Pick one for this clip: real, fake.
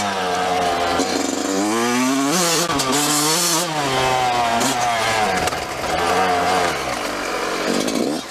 real